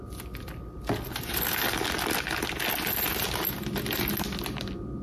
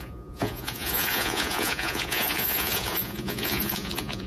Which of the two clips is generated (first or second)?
second